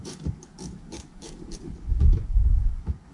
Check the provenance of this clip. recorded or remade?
remade